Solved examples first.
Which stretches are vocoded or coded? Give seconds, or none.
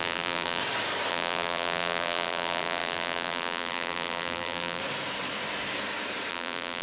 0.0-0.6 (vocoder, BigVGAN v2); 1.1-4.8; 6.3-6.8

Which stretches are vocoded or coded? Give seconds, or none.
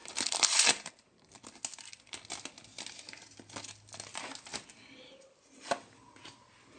0.0-0.9 (vocoder, BigVGAN v2)